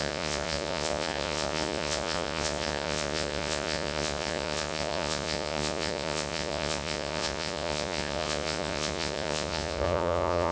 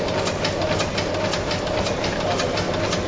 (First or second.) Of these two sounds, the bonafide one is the second